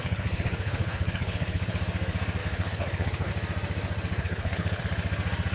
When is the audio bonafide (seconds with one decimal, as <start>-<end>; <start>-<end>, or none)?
1.7-2.4; 3.3-4.1; 4.8-5.5